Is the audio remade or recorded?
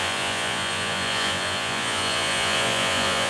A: remade